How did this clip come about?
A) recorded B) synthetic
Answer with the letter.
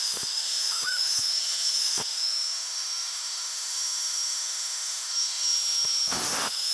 B